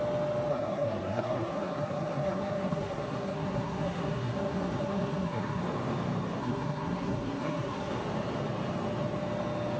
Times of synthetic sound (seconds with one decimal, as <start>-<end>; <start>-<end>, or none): 0.5-5.6; 6.4-8.0